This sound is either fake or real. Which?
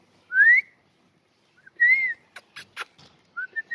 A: real